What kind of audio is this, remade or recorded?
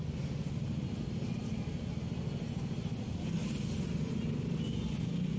recorded